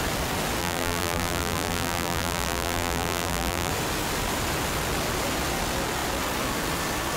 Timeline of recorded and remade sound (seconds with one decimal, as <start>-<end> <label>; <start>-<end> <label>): 0.0-0.6 recorded; 0.6-3.7 remade; 3.7-7.2 recorded